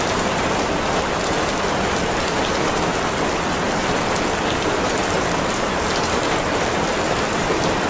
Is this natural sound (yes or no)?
no